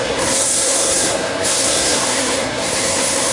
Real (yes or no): no